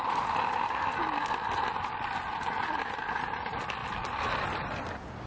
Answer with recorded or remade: recorded